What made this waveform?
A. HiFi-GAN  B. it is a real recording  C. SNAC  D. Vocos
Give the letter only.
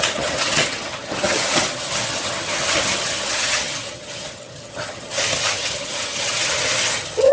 A